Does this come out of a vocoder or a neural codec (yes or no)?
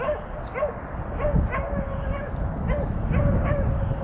no